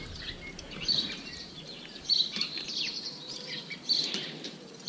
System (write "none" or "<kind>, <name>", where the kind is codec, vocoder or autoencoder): vocoder, BigVGAN v2